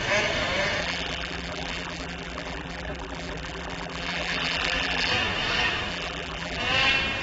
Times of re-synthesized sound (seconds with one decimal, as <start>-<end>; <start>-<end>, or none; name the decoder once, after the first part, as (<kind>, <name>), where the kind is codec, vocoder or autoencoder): 0.8-5.1 (vocoder, BigVGAN v2); 5.9-6.6